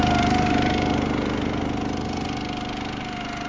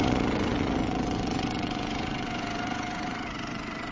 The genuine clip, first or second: first